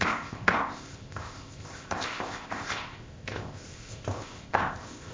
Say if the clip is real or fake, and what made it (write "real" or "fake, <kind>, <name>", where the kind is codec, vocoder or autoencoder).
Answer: fake, codec, ZipCodec